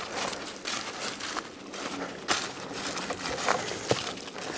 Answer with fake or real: real